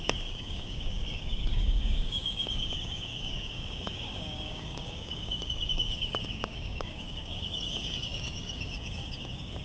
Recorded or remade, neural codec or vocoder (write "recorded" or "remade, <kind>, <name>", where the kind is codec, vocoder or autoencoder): remade, codec, DAC